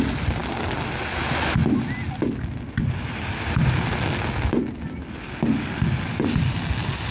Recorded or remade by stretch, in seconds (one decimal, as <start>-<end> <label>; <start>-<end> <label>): 0.0-7.1 recorded